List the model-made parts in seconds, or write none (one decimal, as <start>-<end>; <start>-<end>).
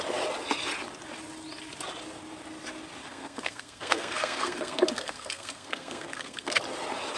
3.0-6.6